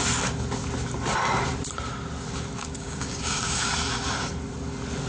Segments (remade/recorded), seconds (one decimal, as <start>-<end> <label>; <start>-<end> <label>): 0.0-2.6 recorded; 2.6-3.7 remade; 3.7-5.1 recorded

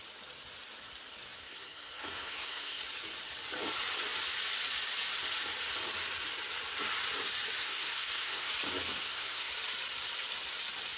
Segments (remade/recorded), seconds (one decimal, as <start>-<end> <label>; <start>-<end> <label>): 0.0-1.4 recorded; 1.4-2.8 remade; 2.8-7.6 recorded; 7.6-8.5 remade; 8.5-8.9 recorded; 8.9-9.5 remade; 9.5-11.0 recorded

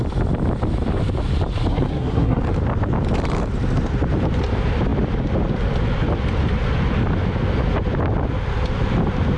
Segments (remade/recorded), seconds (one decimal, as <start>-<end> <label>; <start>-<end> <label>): 0.0-1.7 recorded; 1.7-2.4 remade; 2.4-9.4 recorded

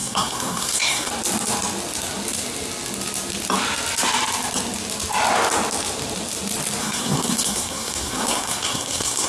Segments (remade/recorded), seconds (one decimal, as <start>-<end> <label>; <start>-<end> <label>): 0.0-1.1 remade; 1.1-6.8 recorded; 6.8-9.3 remade

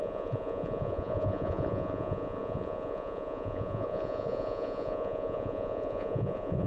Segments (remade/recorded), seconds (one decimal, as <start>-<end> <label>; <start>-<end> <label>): 0.0-6.7 remade

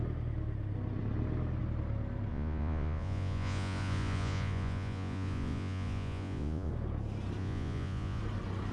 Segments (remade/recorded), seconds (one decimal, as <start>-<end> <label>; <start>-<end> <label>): 0.0-2.3 recorded; 2.3-6.7 remade; 6.7-7.4 recorded; 7.4-8.2 remade; 8.2-8.7 recorded

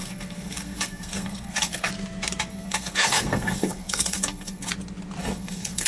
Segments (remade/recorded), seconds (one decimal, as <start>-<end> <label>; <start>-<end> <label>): 0.0-1.9 remade; 1.9-2.5 recorded; 2.5-4.7 remade; 4.7-5.2 recorded; 5.2-5.9 remade